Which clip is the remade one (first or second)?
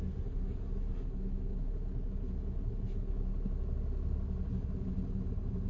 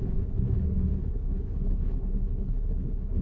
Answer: second